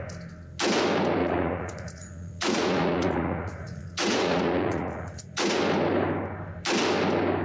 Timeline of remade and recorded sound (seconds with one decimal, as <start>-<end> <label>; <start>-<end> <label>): 0.0-1.2 recorded; 1.2-5.6 remade; 5.6-7.4 recorded